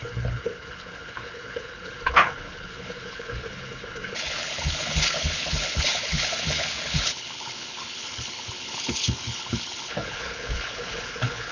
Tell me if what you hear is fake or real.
fake